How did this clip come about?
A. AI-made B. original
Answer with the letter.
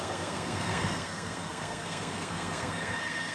A